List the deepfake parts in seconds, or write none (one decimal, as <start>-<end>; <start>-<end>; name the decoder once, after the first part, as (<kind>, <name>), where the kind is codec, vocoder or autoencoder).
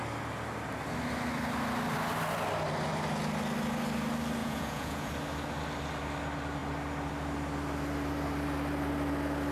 4.4-5.1 (vocoder, Vocos)